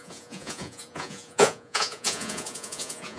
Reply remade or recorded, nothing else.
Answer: remade